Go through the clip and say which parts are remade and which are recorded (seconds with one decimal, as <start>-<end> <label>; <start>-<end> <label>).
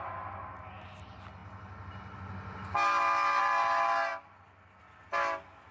0.0-5.7 recorded